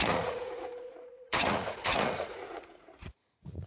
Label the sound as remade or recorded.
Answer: remade